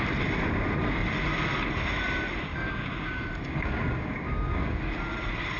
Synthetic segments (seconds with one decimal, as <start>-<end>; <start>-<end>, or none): 2.5-4.8